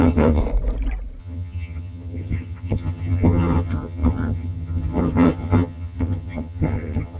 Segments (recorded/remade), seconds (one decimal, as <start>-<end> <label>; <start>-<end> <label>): 0.0-0.4 remade; 0.4-1.2 recorded; 1.2-7.2 remade